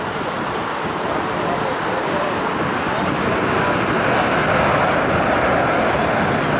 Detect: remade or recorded recorded